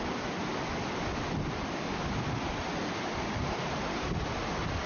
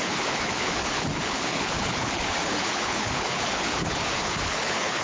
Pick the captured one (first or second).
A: first